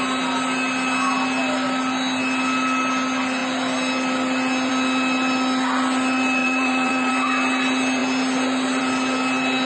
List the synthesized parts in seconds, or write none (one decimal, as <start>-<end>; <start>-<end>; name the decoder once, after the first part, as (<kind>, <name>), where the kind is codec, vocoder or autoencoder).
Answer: 6.4-7.1 (vocoder, Vocos)